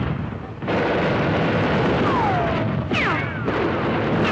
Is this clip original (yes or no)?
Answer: yes